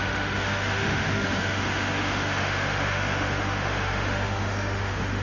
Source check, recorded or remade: remade